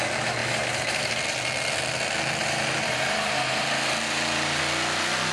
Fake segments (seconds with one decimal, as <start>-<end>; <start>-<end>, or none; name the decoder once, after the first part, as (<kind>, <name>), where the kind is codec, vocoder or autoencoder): 0.4-1.2 (vocoder, BigVGAN v2); 2.4-4.6